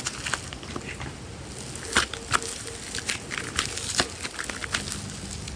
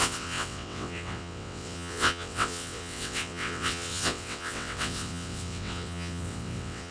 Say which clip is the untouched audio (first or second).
first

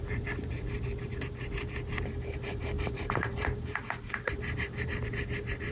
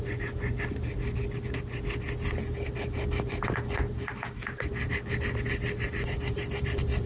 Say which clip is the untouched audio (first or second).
second